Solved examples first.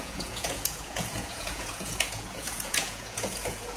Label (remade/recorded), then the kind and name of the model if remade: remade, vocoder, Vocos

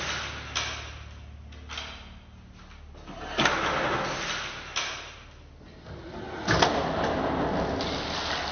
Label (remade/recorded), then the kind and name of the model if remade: recorded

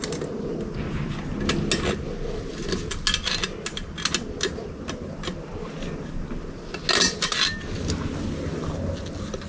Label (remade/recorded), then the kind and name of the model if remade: recorded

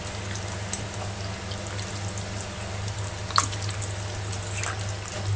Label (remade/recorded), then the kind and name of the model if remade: recorded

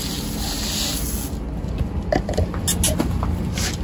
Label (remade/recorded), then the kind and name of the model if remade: recorded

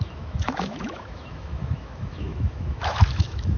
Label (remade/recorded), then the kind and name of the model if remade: remade, autoencoder, DAC-VAE